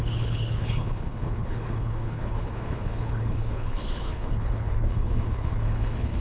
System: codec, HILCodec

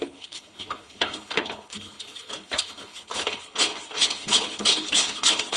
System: codec, HILCodec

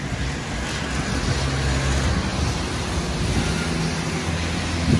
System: none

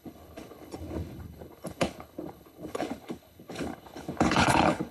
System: codec, HILCodec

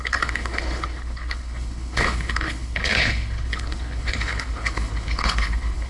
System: codec, HILCodec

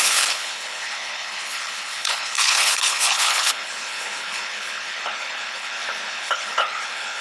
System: codec, HILCodec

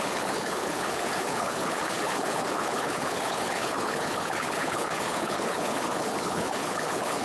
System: codec, HILCodec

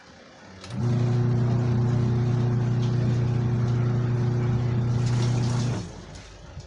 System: none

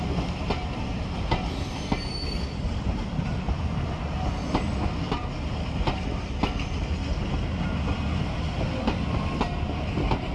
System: none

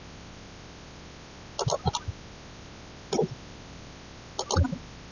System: none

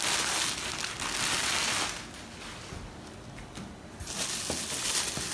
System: none